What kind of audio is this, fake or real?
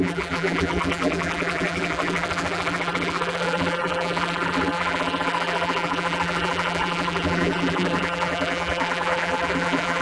fake